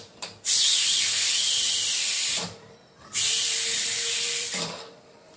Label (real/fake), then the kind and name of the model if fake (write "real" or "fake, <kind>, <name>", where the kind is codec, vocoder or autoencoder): fake, vocoder, BigVGAN v2